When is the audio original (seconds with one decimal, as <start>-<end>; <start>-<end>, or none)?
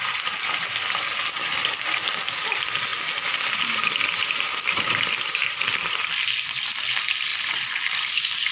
0.0-8.5